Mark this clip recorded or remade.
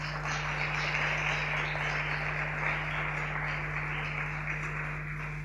recorded